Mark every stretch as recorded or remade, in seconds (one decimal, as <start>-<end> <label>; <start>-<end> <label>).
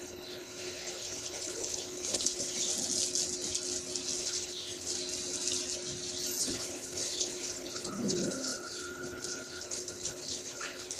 0.0-2.7 remade; 2.7-4.2 recorded; 4.2-4.9 remade; 4.9-6.4 recorded; 6.4-11.0 remade